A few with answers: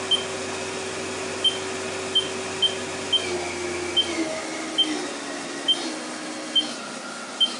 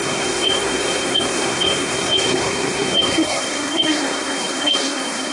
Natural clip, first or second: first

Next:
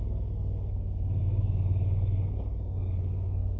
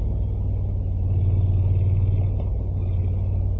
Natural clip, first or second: second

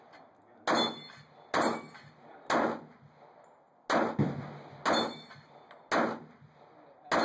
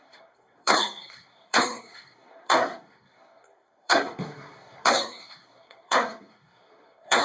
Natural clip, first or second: first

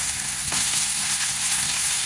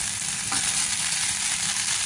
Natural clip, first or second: second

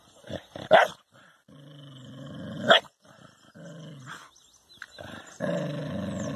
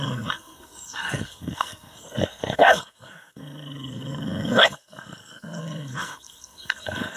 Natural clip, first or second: first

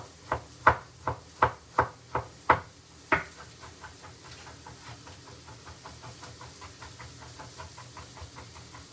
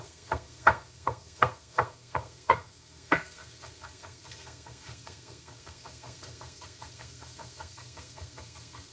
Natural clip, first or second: first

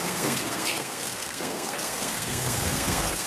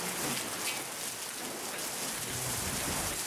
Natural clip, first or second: second